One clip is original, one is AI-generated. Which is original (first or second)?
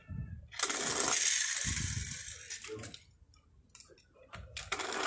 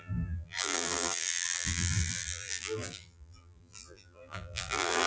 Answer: first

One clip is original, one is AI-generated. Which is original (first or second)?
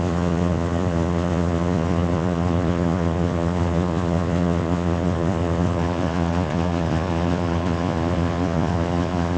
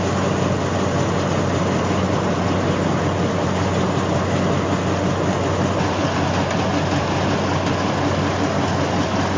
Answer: second